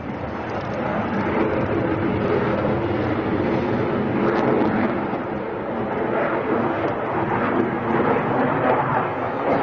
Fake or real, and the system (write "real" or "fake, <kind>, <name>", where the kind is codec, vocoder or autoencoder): real